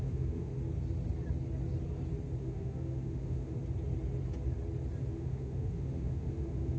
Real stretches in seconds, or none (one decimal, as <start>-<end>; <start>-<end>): 0.5-2.4; 3.5-5.1